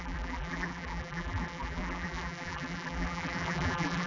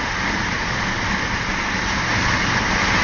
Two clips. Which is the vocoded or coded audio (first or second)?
first